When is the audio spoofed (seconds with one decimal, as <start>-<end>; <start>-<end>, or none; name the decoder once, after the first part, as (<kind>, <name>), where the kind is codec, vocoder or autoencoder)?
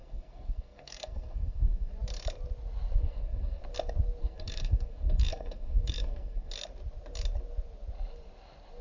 0.0-1.9 (codec, SNAC); 3.0-3.6; 4.2-6.5